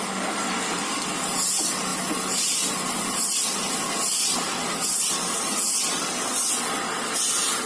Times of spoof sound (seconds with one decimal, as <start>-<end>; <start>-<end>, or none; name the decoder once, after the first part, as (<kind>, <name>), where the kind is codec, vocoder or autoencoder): none